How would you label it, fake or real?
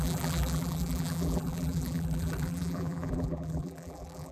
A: fake